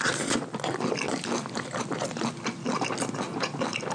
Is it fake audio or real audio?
real